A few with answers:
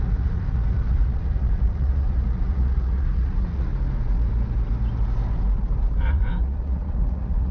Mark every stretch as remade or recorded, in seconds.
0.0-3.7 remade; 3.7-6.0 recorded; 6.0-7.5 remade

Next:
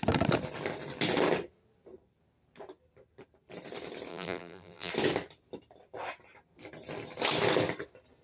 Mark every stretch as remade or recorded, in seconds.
0.0-4.1 recorded; 4.1-4.9 remade; 4.9-8.2 recorded

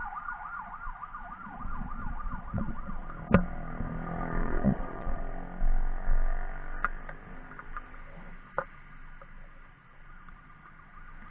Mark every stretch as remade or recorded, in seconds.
0.0-3.0 remade; 3.0-4.4 recorded; 4.4-5.2 remade; 5.2-11.3 recorded

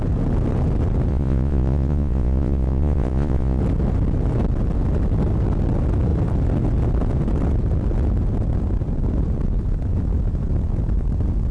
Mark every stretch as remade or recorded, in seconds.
0.0-1.1 recorded; 1.1-3.6 remade; 3.6-11.5 recorded

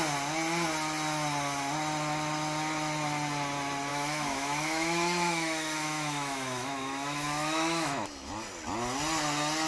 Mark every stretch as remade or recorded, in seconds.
0.0-3.9 recorded; 3.9-8.3 remade; 8.3-9.7 recorded

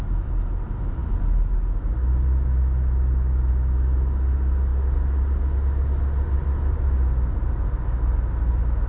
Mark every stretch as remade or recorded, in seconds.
0.0-8.9 recorded

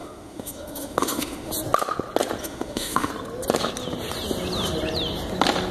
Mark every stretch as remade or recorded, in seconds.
0.0-1.5 remade; 1.5-2.4 recorded; 2.4-3.1 remade; 3.1-5.7 recorded